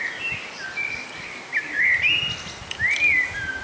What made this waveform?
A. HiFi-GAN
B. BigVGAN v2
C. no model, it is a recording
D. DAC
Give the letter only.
C